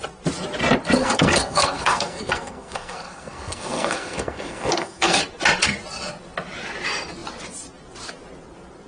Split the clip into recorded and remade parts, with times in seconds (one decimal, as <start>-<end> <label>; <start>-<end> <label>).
0.0-1.0 recorded; 1.0-5.2 remade; 5.2-8.9 recorded

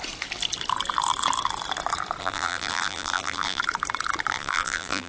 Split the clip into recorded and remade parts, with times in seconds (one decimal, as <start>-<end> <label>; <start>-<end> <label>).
0.0-2.2 recorded; 2.2-3.6 remade; 3.6-4.3 recorded; 4.3-5.1 remade

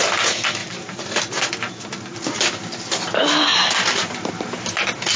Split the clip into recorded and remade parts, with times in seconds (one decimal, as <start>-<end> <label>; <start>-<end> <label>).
0.0-0.6 recorded; 0.6-1.9 remade; 1.9-3.5 recorded; 3.5-4.3 remade; 4.3-5.2 recorded

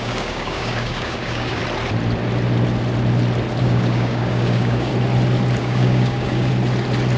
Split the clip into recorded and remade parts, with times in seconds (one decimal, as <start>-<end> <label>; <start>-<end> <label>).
0.0-1.6 remade; 1.6-3.6 recorded; 3.6-4.9 remade; 4.9-5.6 recorded; 5.6-6.5 remade; 6.5-7.2 recorded

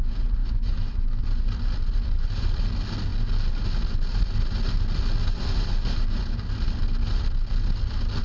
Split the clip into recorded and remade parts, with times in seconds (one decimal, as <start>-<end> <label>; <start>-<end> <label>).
0.0-0.4 recorded; 0.4-1.2 remade; 1.2-8.2 recorded

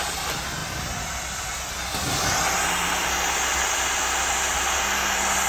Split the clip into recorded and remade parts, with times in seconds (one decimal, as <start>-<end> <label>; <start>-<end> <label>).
0.0-5.5 recorded